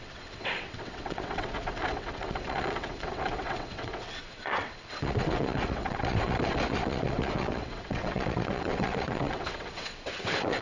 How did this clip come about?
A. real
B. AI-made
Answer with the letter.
B